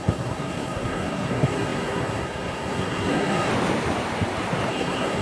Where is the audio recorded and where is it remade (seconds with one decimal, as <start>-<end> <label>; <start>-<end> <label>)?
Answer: 0.0-3.5 remade; 3.5-4.7 recorded; 4.7-5.2 remade